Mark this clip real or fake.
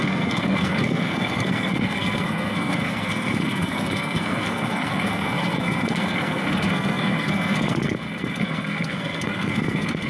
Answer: fake